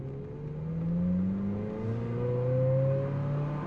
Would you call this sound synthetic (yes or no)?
no